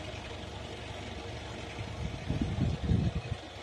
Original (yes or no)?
yes